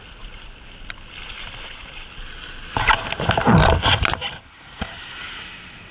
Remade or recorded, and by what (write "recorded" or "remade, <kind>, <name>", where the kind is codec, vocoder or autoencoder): recorded